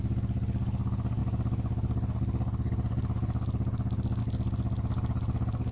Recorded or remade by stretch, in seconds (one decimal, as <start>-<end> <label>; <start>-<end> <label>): 0.0-5.7 recorded